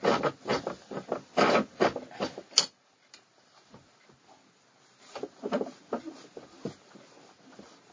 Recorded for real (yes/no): yes